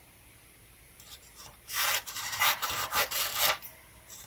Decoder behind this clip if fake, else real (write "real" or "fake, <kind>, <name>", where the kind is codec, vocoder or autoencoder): fake, vocoder, BigVGAN v2